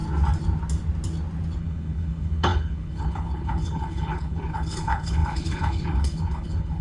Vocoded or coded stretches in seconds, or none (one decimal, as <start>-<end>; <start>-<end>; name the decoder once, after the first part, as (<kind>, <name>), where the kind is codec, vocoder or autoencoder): 1.6-6.8 (codec, HILCodec)